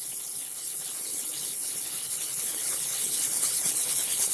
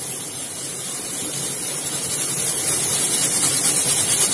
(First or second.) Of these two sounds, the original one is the second